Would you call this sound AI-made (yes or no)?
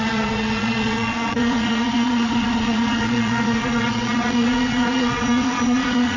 yes